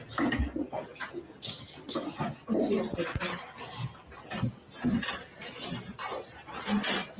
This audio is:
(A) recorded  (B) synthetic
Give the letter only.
A